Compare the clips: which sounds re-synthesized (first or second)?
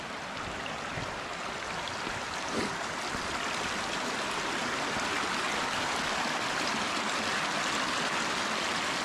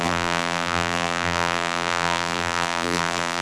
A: second